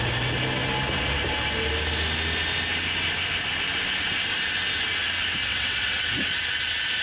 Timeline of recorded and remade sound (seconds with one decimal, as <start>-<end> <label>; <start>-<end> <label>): 0.0-5.4 recorded; 5.4-6.0 remade; 6.0-7.0 recorded